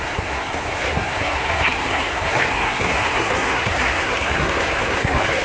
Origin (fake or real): fake